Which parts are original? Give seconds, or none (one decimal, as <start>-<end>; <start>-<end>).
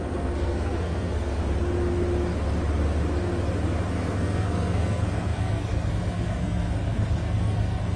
1.4-3.9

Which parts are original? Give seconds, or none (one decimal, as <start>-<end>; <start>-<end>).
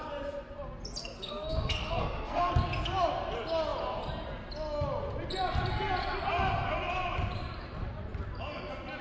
0.0-1.0; 2.5-9.0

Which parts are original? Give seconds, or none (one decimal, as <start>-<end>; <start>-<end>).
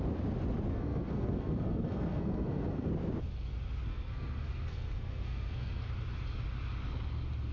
0.0-0.7; 2.9-3.9; 5.9-7.5